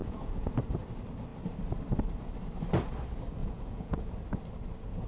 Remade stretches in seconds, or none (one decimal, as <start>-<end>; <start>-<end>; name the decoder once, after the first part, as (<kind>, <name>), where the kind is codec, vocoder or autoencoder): 0.0-0.6 (vocoder, Vocos); 3.4-4.1

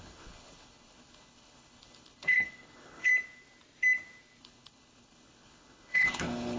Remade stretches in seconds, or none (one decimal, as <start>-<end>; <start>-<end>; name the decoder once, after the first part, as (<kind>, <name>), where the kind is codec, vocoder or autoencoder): 0.0-3.1 (codec, HILCodec); 4.4-6.6

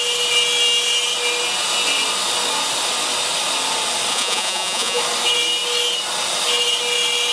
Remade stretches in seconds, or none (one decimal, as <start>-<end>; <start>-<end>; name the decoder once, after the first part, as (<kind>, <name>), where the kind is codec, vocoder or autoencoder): 4.1-5.0 (vocoder, Vocos)

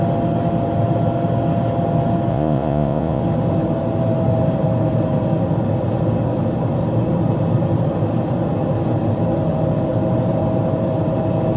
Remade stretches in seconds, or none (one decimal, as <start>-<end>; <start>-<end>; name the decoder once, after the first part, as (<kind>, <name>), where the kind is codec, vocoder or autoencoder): 2.3-3.2 (vocoder, Vocos)

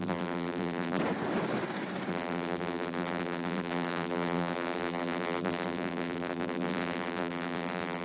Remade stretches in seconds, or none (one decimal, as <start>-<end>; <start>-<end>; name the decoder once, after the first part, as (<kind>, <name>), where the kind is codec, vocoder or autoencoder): 0.0-1.0 (vocoder, BigVGAN v2); 2.1-8.0

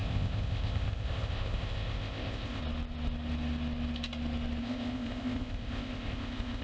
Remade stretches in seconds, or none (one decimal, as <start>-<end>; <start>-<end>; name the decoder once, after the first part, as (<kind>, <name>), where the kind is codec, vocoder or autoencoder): 0.0-2.6 (codec, ZipCodec); 4.6-6.6